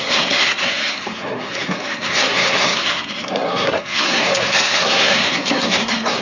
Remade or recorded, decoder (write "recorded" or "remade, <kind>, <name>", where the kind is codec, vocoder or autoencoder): remade, codec, SNAC